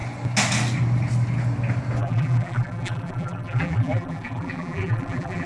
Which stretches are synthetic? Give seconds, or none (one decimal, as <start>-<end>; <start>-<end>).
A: 2.0-5.5